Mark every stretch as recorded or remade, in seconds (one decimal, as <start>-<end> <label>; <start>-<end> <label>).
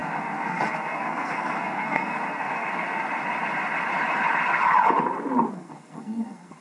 0.0-3.0 remade; 3.0-5.5 recorded; 5.5-6.6 remade